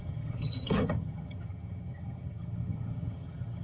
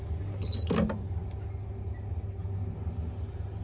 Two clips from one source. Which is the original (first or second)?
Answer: second